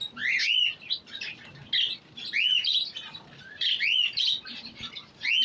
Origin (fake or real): real